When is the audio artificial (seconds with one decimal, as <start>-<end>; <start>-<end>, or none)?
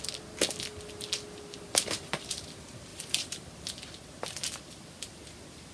2.9-3.5